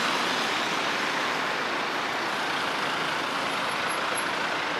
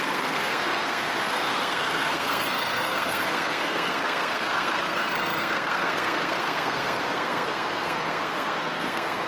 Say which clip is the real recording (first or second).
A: first